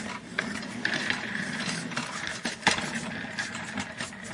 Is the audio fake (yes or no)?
yes